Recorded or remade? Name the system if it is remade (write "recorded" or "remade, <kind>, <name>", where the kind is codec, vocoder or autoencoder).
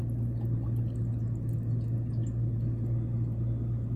recorded